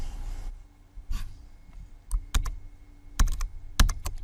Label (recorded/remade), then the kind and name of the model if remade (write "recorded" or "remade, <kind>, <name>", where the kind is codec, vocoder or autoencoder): recorded